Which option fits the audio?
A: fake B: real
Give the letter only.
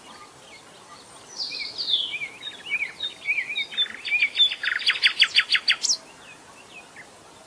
B